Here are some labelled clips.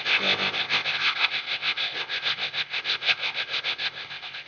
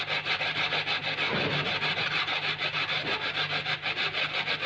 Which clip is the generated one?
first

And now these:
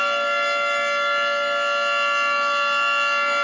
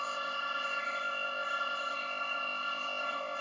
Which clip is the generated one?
second